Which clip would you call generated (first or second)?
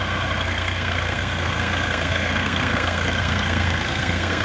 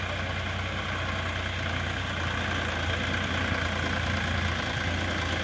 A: first